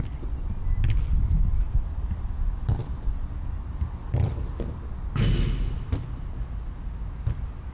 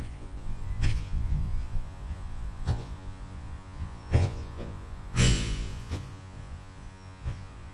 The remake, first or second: second